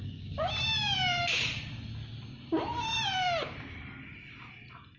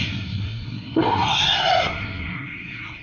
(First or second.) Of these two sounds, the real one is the first